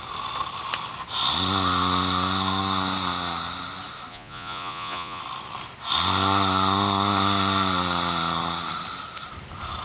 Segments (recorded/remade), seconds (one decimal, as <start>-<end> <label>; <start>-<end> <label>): 0.0-4.1 recorded; 4.1-5.2 remade; 5.2-9.8 recorded